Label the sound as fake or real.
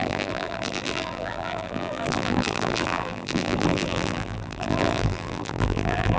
fake